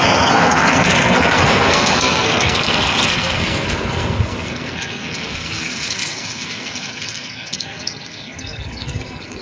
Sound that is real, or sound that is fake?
fake